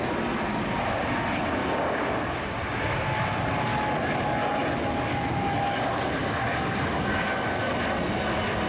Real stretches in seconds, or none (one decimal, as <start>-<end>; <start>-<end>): 0.0-1.6; 2.2-6.2; 7.7-8.7